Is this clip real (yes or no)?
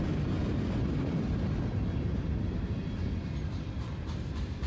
yes